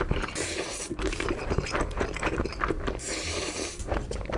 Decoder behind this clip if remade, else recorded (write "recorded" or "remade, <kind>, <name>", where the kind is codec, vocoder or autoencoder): remade, vocoder, BigVGAN v2